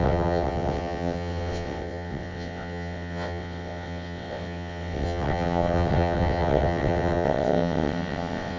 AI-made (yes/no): yes